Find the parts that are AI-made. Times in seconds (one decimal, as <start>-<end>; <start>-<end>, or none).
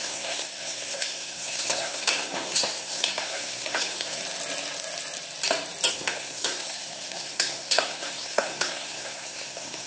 0.0-4.2; 5.9-9.9